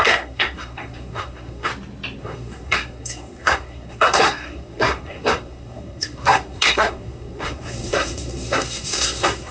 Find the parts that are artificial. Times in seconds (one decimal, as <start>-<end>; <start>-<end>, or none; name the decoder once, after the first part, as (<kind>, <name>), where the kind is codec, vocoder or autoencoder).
0.0-1.7 (codec, SNAC); 2.2-9.5